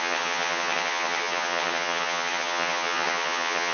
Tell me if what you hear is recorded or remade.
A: remade